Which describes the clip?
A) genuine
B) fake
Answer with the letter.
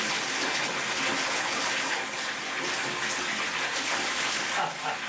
A